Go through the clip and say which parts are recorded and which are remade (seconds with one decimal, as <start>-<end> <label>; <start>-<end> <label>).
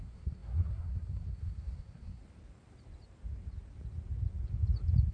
0.0-2.2 remade; 2.2-5.1 recorded